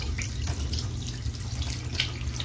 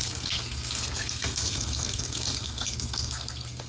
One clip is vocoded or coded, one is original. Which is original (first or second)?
first